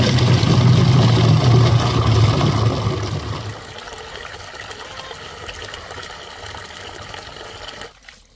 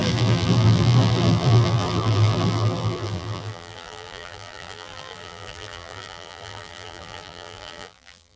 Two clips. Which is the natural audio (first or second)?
first